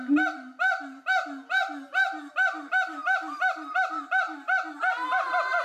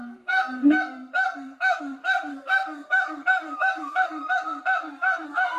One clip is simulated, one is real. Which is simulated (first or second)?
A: second